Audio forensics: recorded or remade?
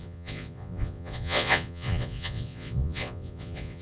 remade